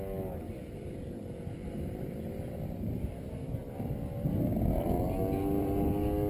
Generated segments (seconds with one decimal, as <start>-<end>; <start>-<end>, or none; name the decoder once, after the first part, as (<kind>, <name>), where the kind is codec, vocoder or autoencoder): none